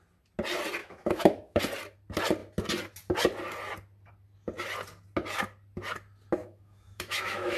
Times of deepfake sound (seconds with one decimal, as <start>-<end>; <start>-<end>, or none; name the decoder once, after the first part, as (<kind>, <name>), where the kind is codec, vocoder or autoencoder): 0.8-1.6 (autoencoder, DAC-VAE); 6.4-7.6